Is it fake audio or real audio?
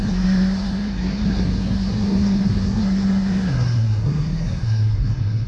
fake